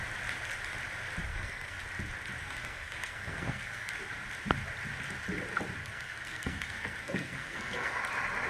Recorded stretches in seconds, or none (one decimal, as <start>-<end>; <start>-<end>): 0.0-1.3; 1.8-2.4; 3.9-5.8; 8.0-8.5